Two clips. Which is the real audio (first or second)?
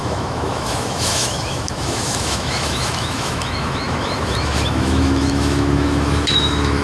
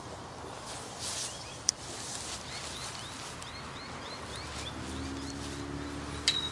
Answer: second